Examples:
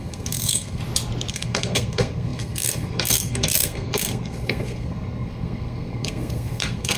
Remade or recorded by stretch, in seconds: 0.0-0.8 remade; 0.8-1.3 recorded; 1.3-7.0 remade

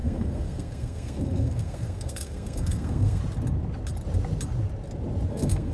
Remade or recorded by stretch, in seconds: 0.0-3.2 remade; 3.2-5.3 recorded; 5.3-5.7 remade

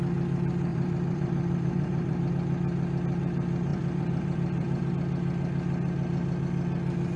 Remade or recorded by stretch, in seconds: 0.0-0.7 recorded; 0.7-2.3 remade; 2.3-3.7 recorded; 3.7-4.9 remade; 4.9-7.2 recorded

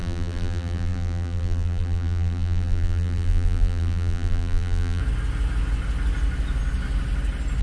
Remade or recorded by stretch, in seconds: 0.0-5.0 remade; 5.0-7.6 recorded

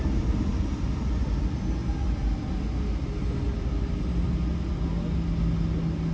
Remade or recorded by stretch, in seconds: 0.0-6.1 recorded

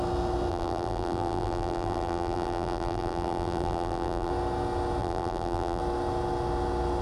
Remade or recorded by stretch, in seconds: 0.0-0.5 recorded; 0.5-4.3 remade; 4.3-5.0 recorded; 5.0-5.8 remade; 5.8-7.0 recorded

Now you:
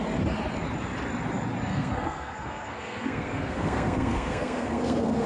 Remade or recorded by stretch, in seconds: 0.0-1.7 recorded; 1.7-5.3 remade

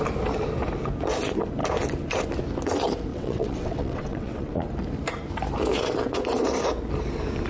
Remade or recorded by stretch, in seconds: 0.0-3.1 recorded; 3.1-4.5 remade; 4.5-7.5 recorded